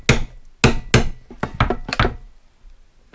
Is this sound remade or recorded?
recorded